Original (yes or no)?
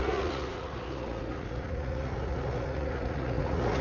no